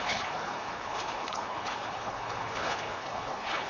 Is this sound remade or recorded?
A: remade